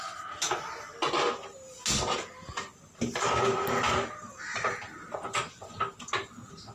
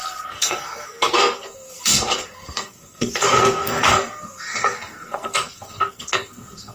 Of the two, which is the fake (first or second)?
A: second